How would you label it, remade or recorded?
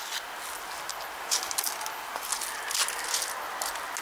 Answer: recorded